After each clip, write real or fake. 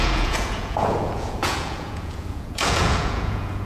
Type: fake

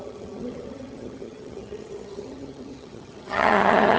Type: fake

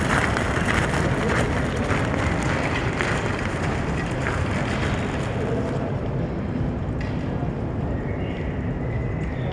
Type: real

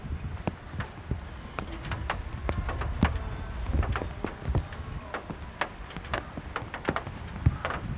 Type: real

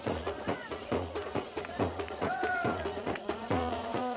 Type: fake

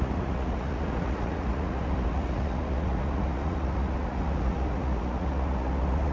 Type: fake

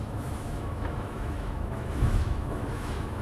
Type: fake